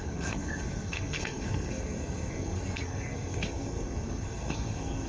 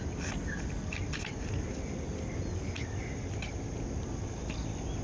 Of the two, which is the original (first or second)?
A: second